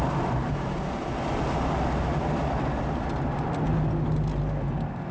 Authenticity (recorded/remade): recorded